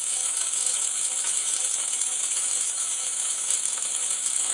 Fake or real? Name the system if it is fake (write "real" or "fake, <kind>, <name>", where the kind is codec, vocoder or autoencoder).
fake, autoencoder, DAC-VAE